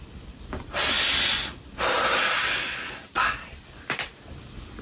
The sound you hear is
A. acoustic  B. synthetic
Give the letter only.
A